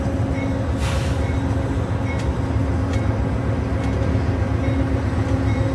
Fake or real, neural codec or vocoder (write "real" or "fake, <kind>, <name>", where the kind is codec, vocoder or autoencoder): real